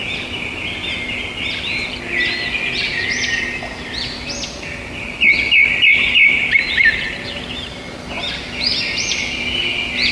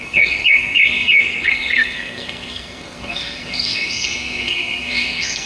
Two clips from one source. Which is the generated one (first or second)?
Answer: second